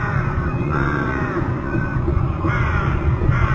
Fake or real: fake